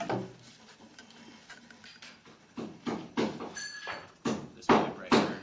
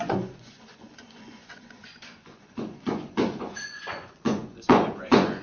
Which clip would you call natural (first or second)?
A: first